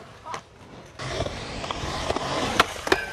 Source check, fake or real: real